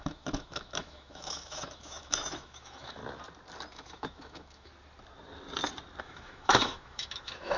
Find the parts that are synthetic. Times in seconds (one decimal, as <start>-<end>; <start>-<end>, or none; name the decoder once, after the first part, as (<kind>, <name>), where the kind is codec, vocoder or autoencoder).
0.0-3.0 (autoencoder, DAC-VAE); 3.7-4.7; 6.0-7.6

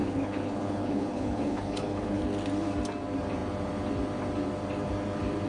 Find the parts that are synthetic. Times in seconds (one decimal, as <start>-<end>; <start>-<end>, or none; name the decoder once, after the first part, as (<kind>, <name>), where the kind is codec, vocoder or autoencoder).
0.0-2.2 (codec, HILCodec)